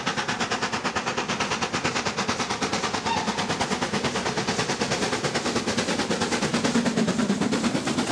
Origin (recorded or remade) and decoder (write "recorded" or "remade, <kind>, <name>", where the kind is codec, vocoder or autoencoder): recorded